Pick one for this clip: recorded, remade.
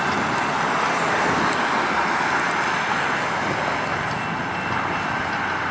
recorded